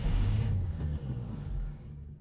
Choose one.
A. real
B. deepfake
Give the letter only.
B